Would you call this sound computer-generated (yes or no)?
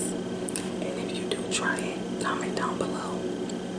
no